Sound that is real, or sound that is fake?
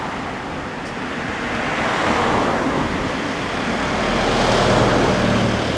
real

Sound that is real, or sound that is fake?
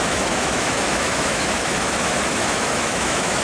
fake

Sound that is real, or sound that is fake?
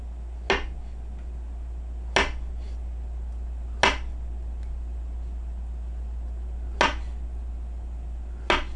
real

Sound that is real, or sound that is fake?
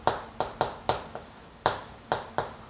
real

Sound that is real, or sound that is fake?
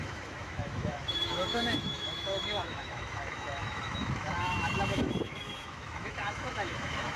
fake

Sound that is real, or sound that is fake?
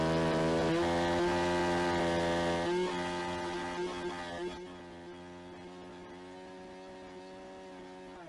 real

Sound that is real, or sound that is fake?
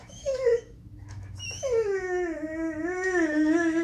fake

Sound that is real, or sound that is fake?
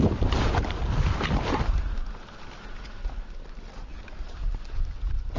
real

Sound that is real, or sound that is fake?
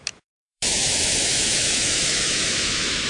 fake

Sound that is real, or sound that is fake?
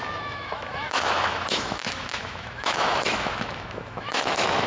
fake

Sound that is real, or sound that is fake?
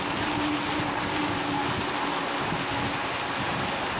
real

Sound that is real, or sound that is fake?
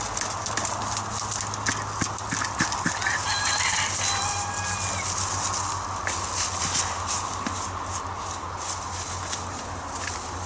real